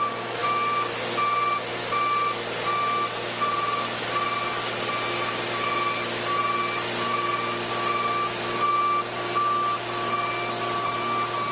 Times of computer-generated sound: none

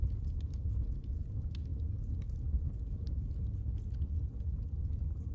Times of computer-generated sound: none

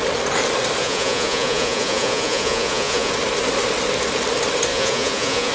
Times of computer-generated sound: 0.8-3.1 (vocoder, Vocos); 4.7-5.5

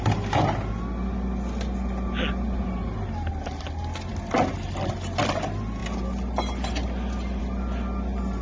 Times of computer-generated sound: none

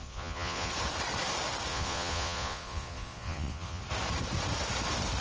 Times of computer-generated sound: 0.0-0.7 (vocoder, Vocos); 1.7-3.8

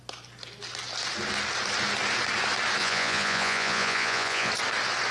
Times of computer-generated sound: 2.8-4.5 (vocoder, Vocos)

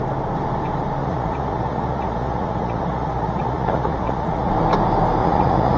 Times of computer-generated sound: 1.0-4.5 (vocoder, Vocos); 5.2-5.8

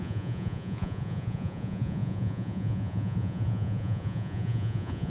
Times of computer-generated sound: 0.0-5.1 (vocoder, Vocos)